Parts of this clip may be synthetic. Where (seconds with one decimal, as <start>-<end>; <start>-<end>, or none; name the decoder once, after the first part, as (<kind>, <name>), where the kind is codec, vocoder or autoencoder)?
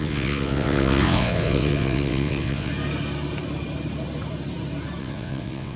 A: 0.0-2.7 (vocoder, WaveNeXt); 5.0-5.8